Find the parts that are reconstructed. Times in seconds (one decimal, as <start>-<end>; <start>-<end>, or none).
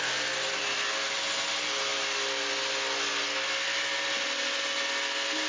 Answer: none